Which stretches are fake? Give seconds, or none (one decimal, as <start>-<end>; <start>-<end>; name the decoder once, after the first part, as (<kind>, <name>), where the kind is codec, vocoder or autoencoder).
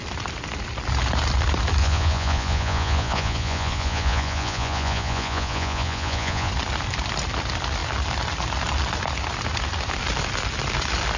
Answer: 1.8-6.5 (vocoder, Vocos)